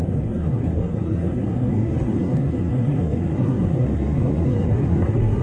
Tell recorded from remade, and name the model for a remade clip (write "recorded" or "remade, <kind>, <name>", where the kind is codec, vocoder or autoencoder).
remade, codec, SNAC